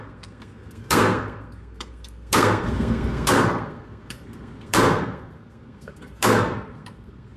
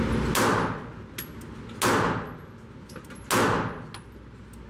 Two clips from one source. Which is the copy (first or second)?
first